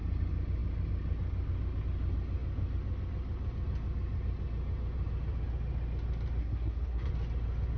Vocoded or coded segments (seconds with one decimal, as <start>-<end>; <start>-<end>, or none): 6.4-7.1